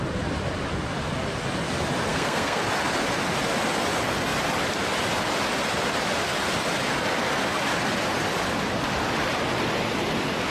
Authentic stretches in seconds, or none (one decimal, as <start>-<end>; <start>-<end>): 0.0-2.1; 2.6-10.5